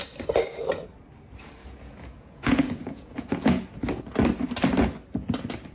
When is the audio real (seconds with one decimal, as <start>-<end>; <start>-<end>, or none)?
0.0-1.6; 4.0-5.7